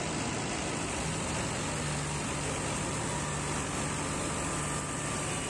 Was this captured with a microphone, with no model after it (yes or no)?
yes